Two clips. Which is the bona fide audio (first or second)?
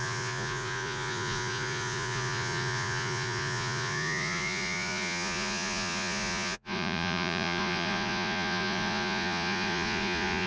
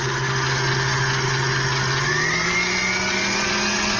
second